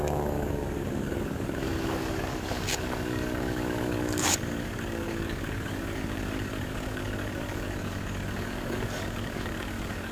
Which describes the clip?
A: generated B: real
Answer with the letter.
A